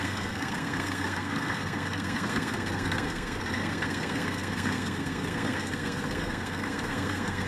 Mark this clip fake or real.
fake